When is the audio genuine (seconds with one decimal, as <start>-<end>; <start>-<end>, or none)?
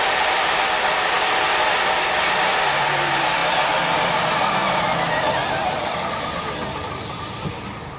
0.0-8.0